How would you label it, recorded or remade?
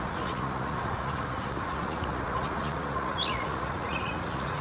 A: remade